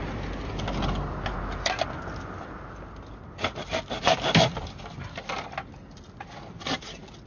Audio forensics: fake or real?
real